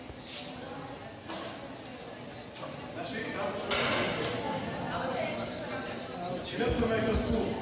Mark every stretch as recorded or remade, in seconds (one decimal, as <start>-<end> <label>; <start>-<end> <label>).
0.0-5.1 recorded; 5.1-6.6 remade; 6.6-7.6 recorded